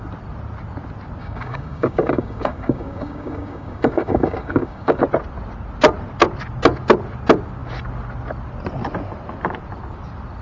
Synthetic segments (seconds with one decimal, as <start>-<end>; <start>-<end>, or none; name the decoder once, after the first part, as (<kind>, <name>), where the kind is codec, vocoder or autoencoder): 1.2-5.0 (codec, DAC)